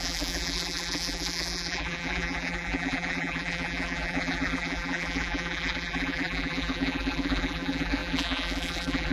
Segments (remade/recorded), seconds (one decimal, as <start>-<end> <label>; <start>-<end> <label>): 0.0-9.1 remade